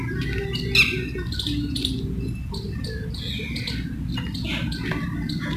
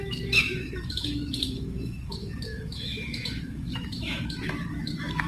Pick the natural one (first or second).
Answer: first